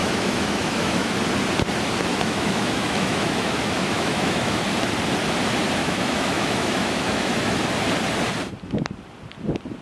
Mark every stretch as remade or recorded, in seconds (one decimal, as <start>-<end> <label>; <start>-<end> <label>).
0.0-1.1 remade; 1.1-2.1 recorded; 2.1-4.6 remade; 4.6-5.8 recorded; 5.8-7.6 remade; 7.6-9.8 recorded